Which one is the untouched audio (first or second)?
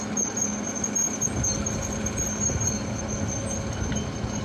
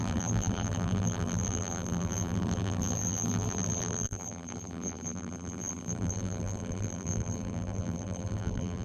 first